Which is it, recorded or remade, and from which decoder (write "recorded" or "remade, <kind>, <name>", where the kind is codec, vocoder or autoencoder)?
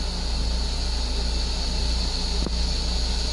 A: recorded